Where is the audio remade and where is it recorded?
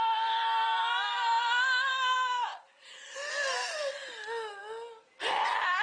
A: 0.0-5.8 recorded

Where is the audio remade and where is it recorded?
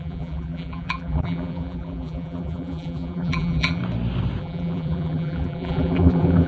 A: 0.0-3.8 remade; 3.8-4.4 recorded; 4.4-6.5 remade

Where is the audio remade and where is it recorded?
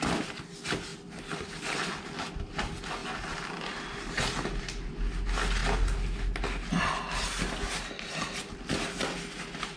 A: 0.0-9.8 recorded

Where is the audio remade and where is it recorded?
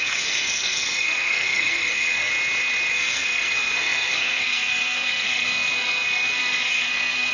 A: 0.0-2.3 remade; 2.3-2.9 recorded; 2.9-7.3 remade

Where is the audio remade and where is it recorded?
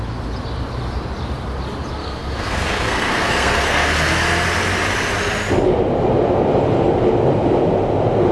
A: 0.0-2.0 recorded; 2.0-3.9 remade; 3.9-8.3 recorded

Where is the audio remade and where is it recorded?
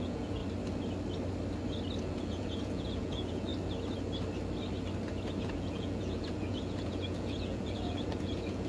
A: 0.0-0.4 remade; 0.4-2.0 recorded; 2.0-3.5 remade; 3.5-5.4 recorded; 5.4-8.7 remade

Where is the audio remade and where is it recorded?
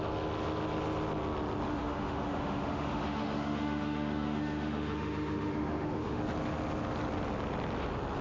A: 0.0-1.7 recorded; 1.7-6.2 remade; 6.2-8.2 recorded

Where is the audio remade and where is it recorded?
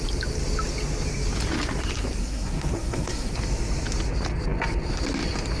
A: 0.0-2.2 recorded; 2.2-3.3 remade; 3.3-5.6 recorded